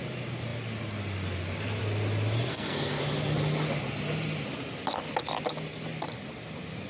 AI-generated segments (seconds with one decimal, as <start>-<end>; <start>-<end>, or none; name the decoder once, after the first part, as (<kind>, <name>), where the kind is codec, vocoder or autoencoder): 2.5-3.0 (codec, SNAC)